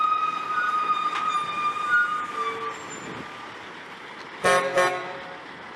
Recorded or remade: recorded